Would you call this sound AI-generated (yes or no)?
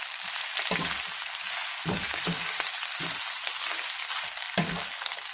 no